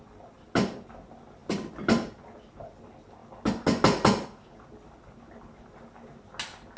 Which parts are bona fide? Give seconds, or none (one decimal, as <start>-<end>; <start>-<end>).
0.0-6.8